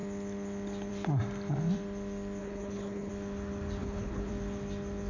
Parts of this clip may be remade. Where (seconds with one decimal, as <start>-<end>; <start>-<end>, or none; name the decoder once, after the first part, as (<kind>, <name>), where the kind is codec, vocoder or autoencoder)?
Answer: 2.4-3.1 (codec, HILCodec); 3.8-4.3